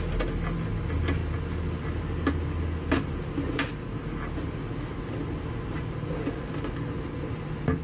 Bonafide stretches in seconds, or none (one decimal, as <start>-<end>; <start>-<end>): 0.0-7.8